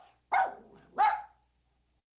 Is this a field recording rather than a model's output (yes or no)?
no